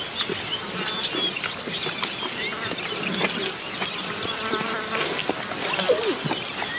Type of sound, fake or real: real